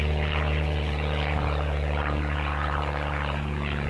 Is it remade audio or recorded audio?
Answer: remade